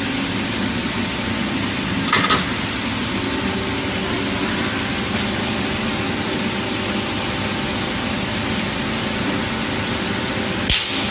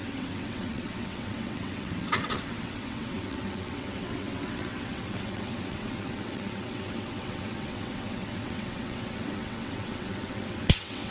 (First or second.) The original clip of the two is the first